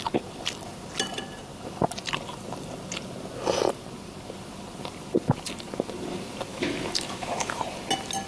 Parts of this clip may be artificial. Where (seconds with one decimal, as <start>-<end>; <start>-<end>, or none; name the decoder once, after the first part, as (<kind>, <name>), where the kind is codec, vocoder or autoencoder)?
6.5-7.6 (autoencoder, DAC-VAE)